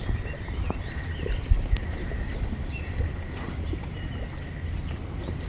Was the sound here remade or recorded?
recorded